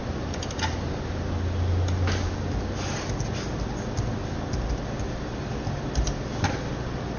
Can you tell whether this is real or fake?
real